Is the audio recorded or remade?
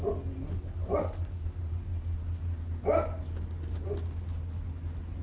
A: recorded